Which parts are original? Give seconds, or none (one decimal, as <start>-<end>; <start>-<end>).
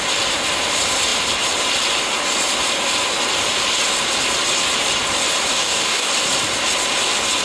0.0-5.5; 6.1-7.4